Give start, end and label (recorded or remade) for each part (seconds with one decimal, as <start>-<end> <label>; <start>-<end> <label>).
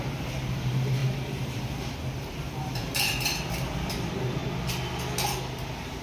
0.0-4.4 remade; 4.4-5.6 recorded; 5.6-6.0 remade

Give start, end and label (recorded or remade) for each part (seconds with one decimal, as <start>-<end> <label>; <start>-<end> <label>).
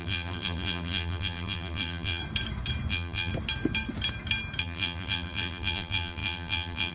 0.0-2.2 remade; 2.2-2.9 recorded; 2.9-3.3 remade; 3.3-4.6 recorded; 4.6-6.9 remade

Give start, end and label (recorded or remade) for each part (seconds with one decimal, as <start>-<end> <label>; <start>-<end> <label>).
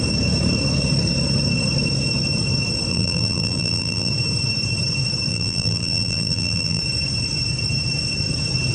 0.0-2.9 recorded; 2.9-4.1 remade; 4.1-5.3 recorded; 5.3-6.8 remade; 6.8-8.7 recorded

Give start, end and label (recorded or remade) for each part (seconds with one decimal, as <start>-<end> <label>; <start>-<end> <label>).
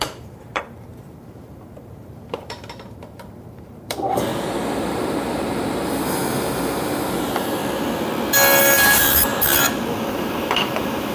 0.0-4.3 remade; 4.3-4.9 recorded; 4.9-7.6 remade; 7.6-8.6 recorded; 8.6-9.3 remade; 9.3-10.1 recorded; 10.1-11.1 remade